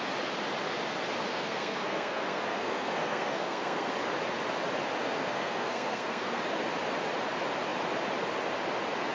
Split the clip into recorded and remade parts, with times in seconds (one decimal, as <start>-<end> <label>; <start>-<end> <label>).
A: 0.0-1.3 recorded; 1.3-3.9 remade; 3.9-5.0 recorded; 5.0-6.4 remade; 6.4-9.1 recorded